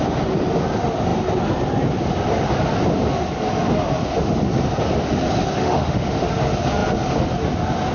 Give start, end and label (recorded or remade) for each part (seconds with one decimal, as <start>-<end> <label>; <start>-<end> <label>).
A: 0.0-5.6 recorded; 5.6-6.3 remade; 6.3-7.9 recorded